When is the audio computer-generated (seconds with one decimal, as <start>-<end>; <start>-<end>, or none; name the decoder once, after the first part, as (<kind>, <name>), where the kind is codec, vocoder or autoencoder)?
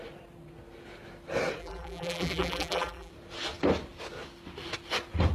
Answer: 1.6-3.1 (vocoder, BigVGAN v2)